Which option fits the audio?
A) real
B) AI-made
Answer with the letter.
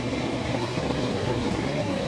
B